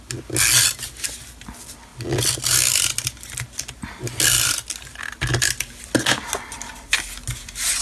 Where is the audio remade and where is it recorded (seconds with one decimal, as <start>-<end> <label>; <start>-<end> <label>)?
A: 0.0-7.8 recorded